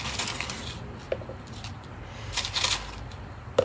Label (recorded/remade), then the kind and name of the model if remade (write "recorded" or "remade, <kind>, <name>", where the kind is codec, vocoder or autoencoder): recorded